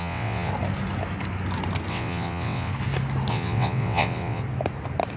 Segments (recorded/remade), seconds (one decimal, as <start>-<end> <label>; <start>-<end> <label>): 0.0-0.5 remade; 0.5-1.9 recorded; 1.9-2.7 remade; 2.7-3.3 recorded; 3.3-4.4 remade; 4.4-5.2 recorded